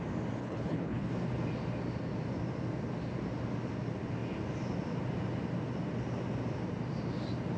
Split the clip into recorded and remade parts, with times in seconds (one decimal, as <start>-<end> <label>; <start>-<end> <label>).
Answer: 0.0-0.4 recorded; 0.4-1.1 remade; 1.1-7.6 recorded